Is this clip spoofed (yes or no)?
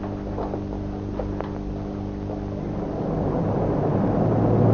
no